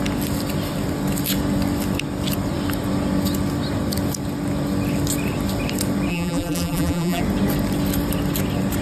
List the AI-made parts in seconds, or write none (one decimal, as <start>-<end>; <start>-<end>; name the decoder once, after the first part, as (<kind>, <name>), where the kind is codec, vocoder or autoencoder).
6.1-7.2 (vocoder, BigVGAN v2)